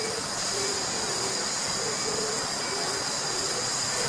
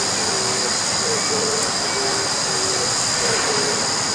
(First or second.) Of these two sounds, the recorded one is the second